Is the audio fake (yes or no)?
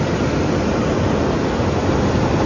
no